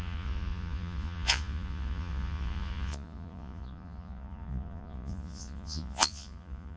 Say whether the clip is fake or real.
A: fake